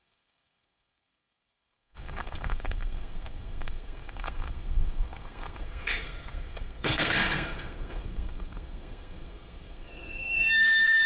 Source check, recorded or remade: remade